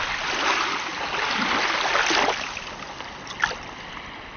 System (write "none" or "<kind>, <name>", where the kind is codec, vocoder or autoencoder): none